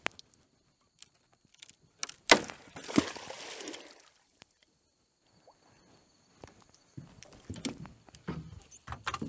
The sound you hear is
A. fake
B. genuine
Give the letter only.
B